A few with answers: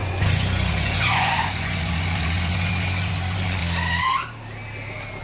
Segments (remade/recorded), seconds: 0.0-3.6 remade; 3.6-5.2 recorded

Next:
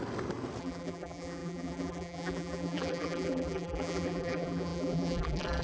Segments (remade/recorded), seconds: 0.0-0.6 recorded; 0.6-5.6 remade

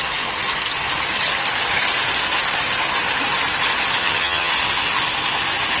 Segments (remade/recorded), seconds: 0.0-4.0 recorded; 4.0-4.5 remade; 4.5-5.8 recorded

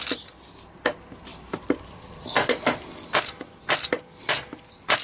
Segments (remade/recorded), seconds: 0.0-1.3 recorded; 1.3-4.3 remade; 4.3-5.0 recorded

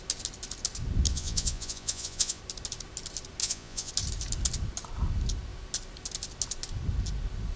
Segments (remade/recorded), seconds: 0.0-1.1 recorded; 1.1-2.4 remade; 2.4-3.4 recorded; 3.4-3.9 remade; 3.9-7.6 recorded

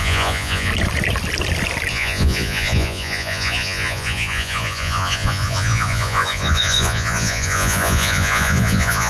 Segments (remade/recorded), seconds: 0.0-0.7 remade; 0.7-1.9 recorded; 1.9-9.1 remade

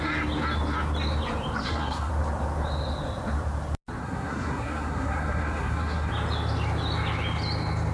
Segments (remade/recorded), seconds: 0.0-1.6 recorded; 1.6-2.1 remade; 2.1-4.0 recorded; 4.0-6.1 remade; 6.1-7.9 recorded